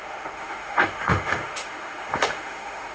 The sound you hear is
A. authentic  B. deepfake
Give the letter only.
B